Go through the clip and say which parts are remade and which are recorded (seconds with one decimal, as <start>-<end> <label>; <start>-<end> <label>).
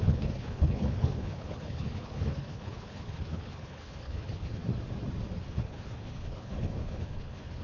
0.0-4.6 remade; 4.6-5.5 recorded; 5.5-7.6 remade